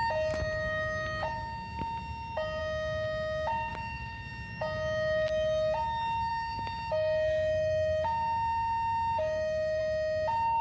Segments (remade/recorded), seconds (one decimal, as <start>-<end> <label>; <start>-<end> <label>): 0.0-3.7 recorded; 3.7-4.3 remade; 4.3-6.3 recorded; 6.3-9.8 remade; 9.8-10.6 recorded